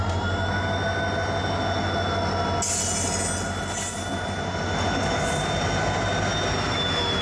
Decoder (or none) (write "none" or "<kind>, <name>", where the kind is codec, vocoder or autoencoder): none